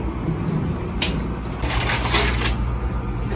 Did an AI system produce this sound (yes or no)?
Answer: no